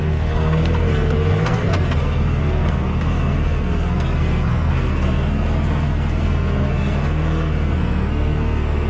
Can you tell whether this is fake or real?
fake